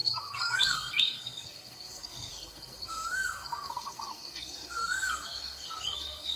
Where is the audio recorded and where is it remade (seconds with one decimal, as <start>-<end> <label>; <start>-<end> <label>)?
0.0-6.4 remade